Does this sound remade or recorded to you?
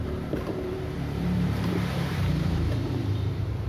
remade